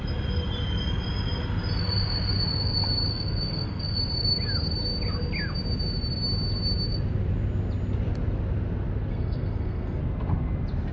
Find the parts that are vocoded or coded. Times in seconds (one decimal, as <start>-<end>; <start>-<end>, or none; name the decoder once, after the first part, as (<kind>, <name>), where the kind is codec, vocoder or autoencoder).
3.1-4.0 (codec, SNAC); 9.1-10.0